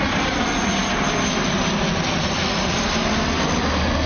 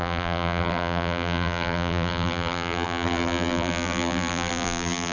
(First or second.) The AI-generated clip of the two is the second